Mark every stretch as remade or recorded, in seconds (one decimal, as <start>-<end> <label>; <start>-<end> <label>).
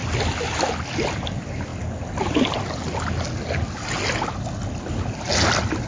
0.0-5.9 recorded